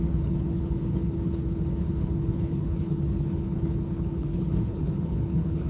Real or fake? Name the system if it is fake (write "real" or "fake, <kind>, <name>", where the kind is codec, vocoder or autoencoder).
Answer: fake, codec, HILCodec